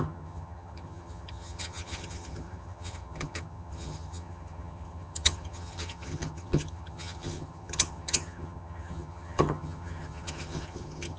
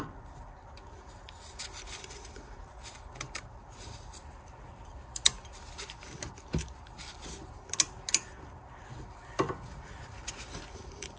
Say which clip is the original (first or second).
second